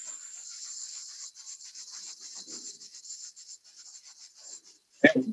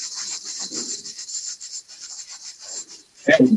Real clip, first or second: first